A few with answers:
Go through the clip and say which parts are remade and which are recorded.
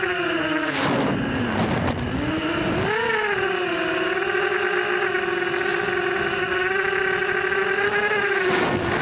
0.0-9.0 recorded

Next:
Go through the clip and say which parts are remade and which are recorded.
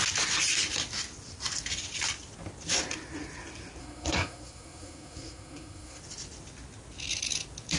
0.0-3.8 recorded; 3.8-6.0 remade; 6.0-7.8 recorded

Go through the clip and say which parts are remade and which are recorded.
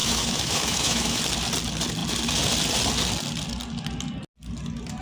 0.0-1.2 remade; 1.2-5.0 recorded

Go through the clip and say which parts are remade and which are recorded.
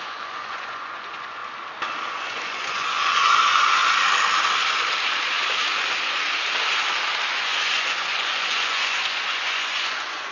0.0-1.4 remade; 1.4-2.1 recorded; 2.1-3.8 remade; 3.8-7.3 recorded; 7.3-10.3 remade